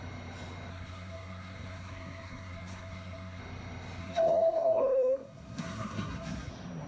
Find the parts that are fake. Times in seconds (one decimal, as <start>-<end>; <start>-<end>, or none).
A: 0.7-3.4; 4.0-6.5